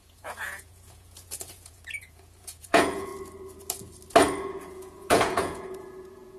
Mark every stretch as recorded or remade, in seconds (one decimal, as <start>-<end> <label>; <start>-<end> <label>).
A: 0.0-3.1 remade; 3.1-4.4 recorded; 4.4-6.4 remade